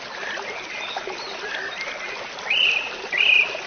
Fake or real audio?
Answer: real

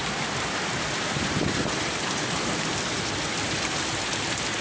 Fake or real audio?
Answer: fake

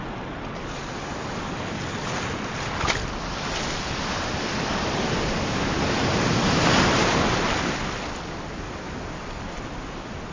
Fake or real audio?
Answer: real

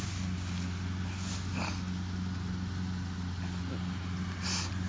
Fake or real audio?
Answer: real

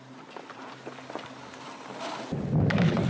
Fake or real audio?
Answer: real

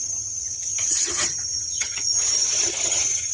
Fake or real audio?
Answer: fake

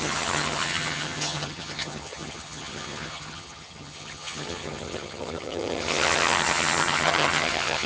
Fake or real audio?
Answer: fake